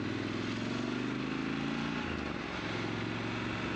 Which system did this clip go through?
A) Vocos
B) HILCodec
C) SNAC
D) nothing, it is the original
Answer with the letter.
D